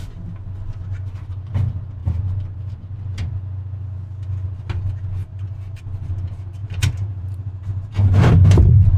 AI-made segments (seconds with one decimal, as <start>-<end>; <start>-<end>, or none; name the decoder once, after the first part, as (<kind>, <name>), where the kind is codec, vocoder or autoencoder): 2.0-2.7 (vocoder, BigVGAN v2); 5.2-5.8; 6.6-9.0